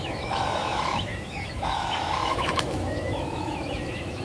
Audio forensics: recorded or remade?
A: remade